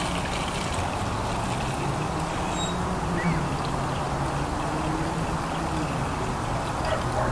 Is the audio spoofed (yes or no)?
no